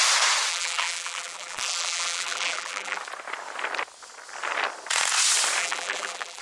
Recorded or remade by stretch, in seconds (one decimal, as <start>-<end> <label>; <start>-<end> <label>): 0.0-0.5 recorded; 0.5-3.0 remade; 3.0-5.6 recorded; 5.6-6.4 remade